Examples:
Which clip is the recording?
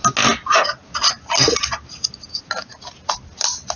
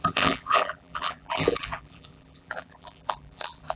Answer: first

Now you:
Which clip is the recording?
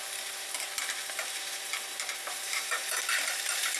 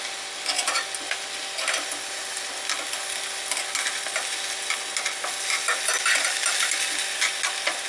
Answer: second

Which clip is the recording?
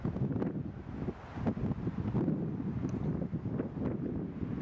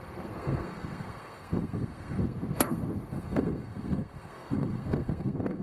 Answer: first